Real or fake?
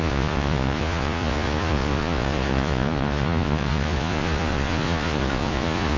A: fake